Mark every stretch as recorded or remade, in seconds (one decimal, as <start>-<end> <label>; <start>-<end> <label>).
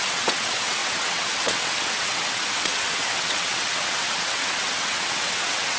0.0-5.8 remade